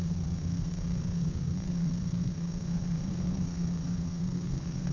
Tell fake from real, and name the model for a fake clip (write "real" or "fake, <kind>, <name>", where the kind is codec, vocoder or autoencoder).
fake, codec, SNAC